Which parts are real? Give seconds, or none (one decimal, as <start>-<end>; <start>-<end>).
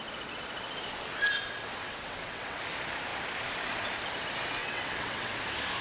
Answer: 0.0-1.8; 2.6-4.6; 5.3-5.8